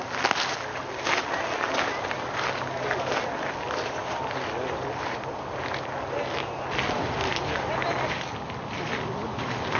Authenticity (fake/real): real